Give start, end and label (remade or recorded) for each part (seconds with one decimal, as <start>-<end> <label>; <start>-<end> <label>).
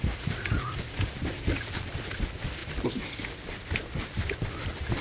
0.0-5.0 recorded